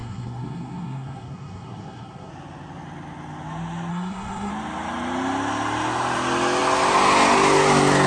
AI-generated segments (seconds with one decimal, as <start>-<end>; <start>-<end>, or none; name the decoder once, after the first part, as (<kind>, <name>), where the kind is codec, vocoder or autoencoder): 0.0-2.3 (codec, SNAC); 3.9-4.5